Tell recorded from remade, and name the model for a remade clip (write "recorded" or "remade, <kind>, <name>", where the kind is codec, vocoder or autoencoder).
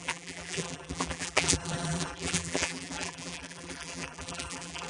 remade, vocoder, BigVGAN v2